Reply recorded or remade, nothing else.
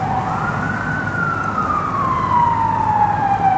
recorded